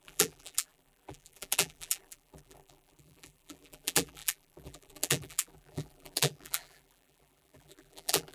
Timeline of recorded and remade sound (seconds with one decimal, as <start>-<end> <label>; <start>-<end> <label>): 0.0-8.3 remade